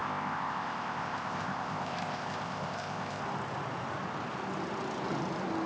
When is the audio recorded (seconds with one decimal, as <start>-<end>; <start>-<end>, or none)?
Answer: 3.2-5.7

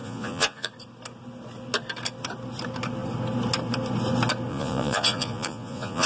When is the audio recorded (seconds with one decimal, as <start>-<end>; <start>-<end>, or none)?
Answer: 0.7-4.5

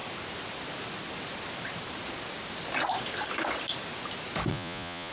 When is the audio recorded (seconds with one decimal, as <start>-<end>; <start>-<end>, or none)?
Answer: 0.0-4.5

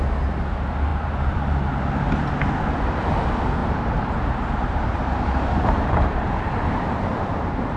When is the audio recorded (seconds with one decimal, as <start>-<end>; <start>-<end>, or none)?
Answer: 0.0-3.6; 6.5-7.8

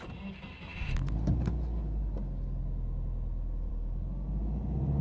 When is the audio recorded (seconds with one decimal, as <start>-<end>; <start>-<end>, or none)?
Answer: 0.0-5.0